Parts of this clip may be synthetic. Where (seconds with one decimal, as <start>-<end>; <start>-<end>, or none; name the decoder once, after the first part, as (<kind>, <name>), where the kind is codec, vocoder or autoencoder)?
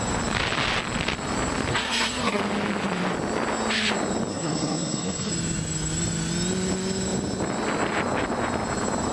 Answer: 1.7-2.4 (codec, SNAC); 4.3-5.3